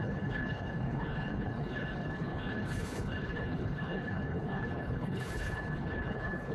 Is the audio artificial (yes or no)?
yes